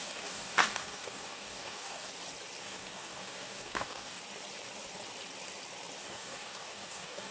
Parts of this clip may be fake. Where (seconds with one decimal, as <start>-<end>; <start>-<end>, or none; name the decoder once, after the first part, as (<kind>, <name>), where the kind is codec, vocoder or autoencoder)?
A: 0.0-2.1 (codec, DAC); 2.6-4.2; 6.0-7.3